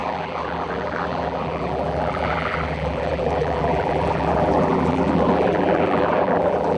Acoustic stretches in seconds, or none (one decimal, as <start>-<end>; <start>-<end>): none